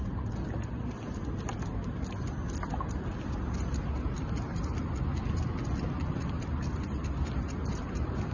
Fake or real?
real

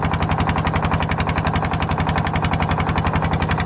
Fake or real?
real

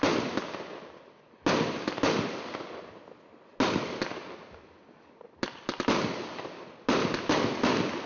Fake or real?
real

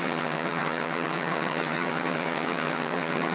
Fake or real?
fake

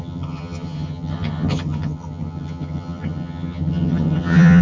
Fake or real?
fake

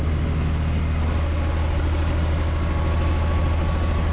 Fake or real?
real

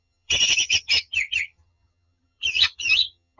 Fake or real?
fake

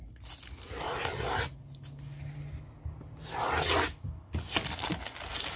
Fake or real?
real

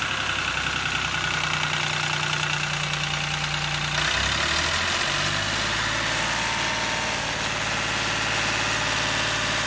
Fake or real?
real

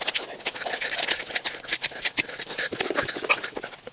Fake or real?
real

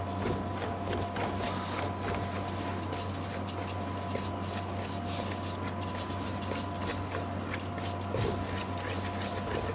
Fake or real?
real